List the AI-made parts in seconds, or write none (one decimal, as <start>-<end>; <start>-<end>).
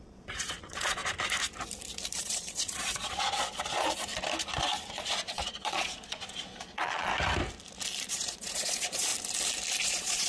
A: 0.0-1.0; 2.2-4.1; 4.9-7.1; 8.1-9.1; 9.8-10.3